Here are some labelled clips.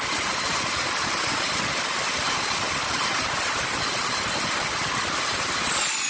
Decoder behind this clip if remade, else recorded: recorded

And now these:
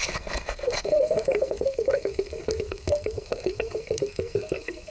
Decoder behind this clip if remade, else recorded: remade, codec, SNAC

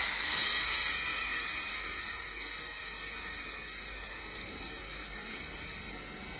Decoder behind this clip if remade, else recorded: remade, codec, SNAC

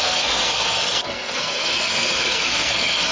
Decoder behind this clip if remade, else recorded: remade, codec, SNAC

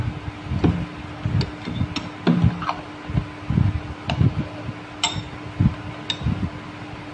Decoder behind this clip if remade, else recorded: recorded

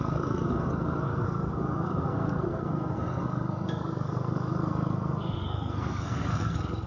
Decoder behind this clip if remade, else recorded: remade, codec, SNAC